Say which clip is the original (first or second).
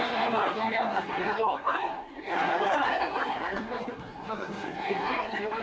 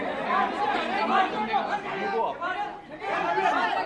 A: second